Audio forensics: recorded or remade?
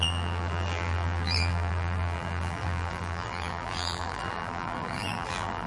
remade